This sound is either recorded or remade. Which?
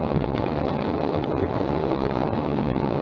remade